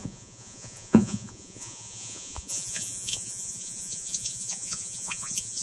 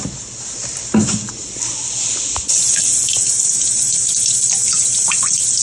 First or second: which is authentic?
second